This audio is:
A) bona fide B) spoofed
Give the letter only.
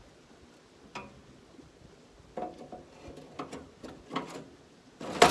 A